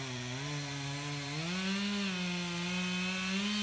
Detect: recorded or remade recorded